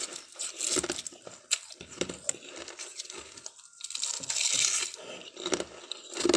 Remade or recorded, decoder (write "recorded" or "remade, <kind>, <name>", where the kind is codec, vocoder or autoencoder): recorded